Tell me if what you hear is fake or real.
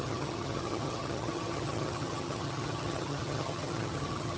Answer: fake